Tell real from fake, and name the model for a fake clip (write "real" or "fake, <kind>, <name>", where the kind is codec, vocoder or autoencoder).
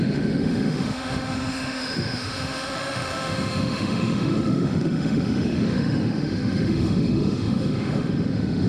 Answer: fake, autoencoder, DAC-VAE